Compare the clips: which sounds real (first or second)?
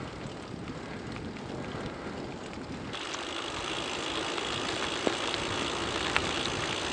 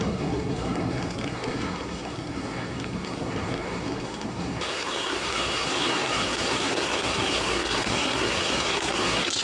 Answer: first